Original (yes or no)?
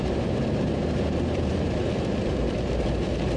no